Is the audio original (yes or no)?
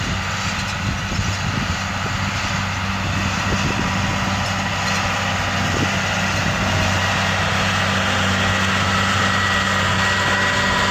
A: yes